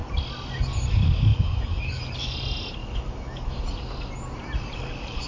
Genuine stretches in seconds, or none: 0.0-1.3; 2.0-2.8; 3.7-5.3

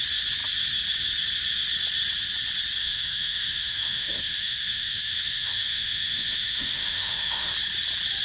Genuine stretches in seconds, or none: 0.0-2.8; 7.5-8.2

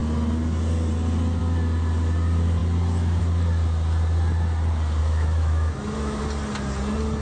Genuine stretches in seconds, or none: 0.0-5.0; 6.2-7.2

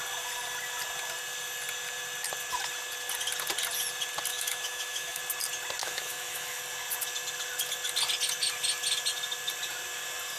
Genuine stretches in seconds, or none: 0.0-4.3; 5.2-5.8; 6.6-10.4